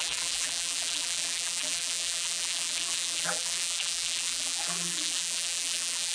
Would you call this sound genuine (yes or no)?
no